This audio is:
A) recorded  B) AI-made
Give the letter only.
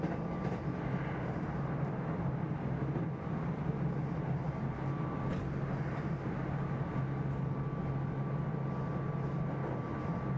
A